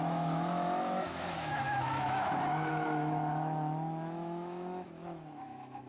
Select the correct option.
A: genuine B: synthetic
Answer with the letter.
B